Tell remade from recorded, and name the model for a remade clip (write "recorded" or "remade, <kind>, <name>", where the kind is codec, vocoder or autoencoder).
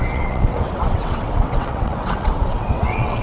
remade, vocoder, WaveNeXt